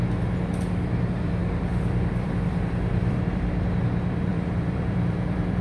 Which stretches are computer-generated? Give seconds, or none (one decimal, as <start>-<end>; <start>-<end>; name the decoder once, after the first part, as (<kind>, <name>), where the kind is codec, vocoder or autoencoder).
1.4-3.8 (vocoder, BigVGAN v2); 4.3-5.6